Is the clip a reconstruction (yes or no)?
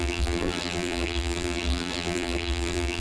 yes